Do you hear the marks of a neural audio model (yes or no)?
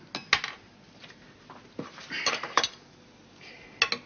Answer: no